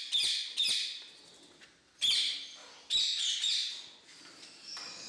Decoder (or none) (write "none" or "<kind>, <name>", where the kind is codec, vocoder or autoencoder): none